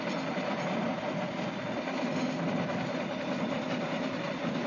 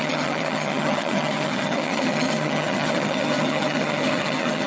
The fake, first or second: second